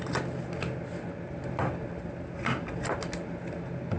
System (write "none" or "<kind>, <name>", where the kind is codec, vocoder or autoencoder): none